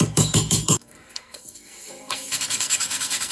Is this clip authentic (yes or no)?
no